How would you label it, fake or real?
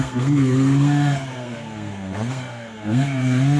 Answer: fake